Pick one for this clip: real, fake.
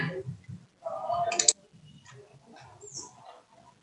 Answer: real